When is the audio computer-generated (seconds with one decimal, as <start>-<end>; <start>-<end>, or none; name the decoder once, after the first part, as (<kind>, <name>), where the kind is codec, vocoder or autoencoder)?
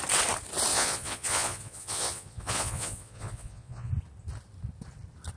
0.7-3.9 (vocoder, Vocos)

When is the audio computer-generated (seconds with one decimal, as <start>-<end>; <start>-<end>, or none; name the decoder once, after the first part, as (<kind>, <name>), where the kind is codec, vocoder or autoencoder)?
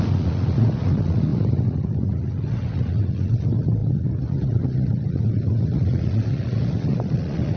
0.0-7.6 (vocoder, Vocos)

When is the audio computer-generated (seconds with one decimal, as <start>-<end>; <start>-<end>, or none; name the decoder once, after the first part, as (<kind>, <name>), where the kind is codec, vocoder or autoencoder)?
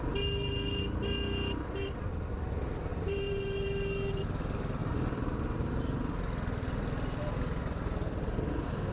2.9-3.4 (vocoder, BigVGAN v2); 4.8-5.8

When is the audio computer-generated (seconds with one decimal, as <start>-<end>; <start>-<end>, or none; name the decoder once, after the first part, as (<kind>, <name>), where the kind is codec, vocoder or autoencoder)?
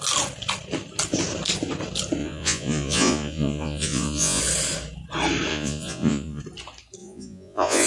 2.2-4.4 (vocoder, Vocos); 5.5-6.4; 7.0-7.9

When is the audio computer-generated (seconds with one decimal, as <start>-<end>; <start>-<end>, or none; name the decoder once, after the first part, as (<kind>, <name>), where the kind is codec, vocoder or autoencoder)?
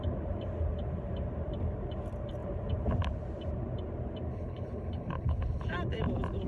4.3-5.7 (codec, HILCodec)